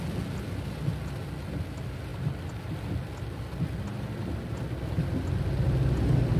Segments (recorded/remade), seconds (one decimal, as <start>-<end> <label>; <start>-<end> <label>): 0.0-6.4 recorded